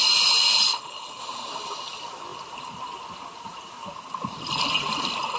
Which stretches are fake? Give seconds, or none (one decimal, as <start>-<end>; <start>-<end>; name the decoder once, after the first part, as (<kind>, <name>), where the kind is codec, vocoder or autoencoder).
0.7-1.2 (codec, HILCodec)